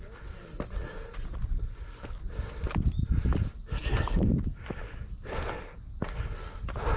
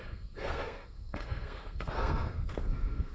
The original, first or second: first